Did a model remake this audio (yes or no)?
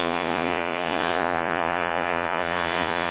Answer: yes